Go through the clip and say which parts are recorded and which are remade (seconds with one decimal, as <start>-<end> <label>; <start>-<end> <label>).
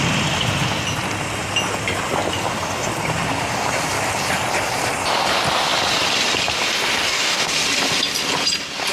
0.0-7.0 recorded; 7.0-7.5 remade; 7.5-8.9 recorded